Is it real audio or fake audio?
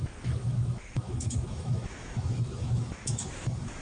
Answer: fake